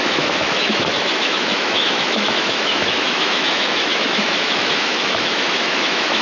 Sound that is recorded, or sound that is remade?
remade